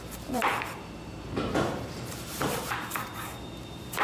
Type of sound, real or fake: fake